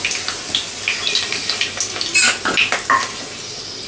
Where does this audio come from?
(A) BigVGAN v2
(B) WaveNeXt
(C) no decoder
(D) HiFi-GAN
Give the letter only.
C